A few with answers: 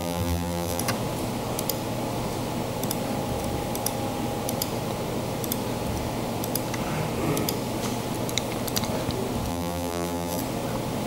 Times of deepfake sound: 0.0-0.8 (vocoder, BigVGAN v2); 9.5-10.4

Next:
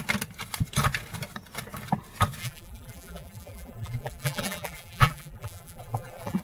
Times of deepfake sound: 2.4-6.4 (vocoder, BigVGAN v2)

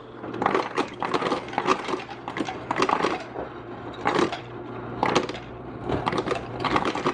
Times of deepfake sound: 1.7-4.4 (vocoder, BigVGAN v2); 5.5-6.5

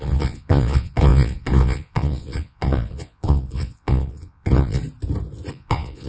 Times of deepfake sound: 0.0-4.8 (vocoder, Vocos); 5.5-6.1